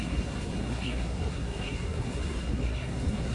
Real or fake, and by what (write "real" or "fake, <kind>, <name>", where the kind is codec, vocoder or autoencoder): fake, codec, SNAC